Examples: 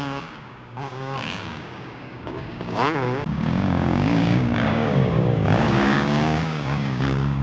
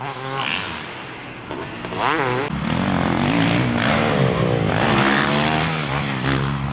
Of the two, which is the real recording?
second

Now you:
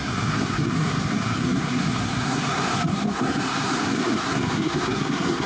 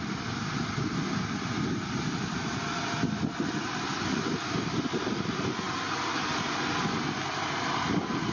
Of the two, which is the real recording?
second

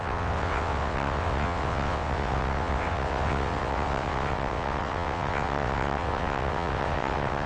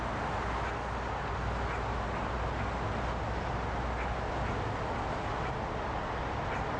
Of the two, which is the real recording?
second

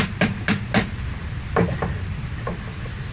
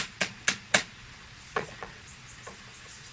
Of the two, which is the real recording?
first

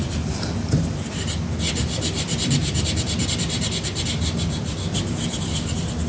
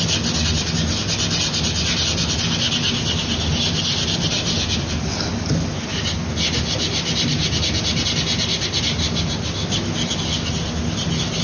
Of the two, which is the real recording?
second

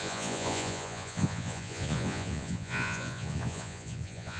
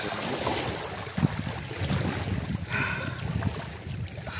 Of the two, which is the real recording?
second